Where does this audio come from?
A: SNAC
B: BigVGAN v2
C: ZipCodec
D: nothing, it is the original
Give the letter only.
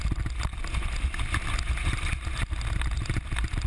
D